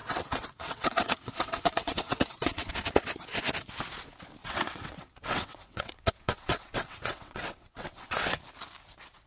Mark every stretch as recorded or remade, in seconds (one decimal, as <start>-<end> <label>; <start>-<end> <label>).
0.0-2.7 remade; 2.7-4.4 recorded; 4.4-8.4 remade; 8.4-9.3 recorded